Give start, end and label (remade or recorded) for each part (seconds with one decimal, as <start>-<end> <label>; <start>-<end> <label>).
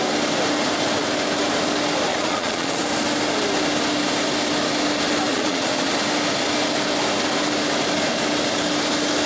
0.0-2.1 recorded; 2.1-2.8 remade; 2.8-5.3 recorded; 5.3-5.9 remade; 5.9-9.3 recorded